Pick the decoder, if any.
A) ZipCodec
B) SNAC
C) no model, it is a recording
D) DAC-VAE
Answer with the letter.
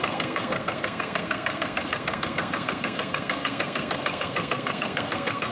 B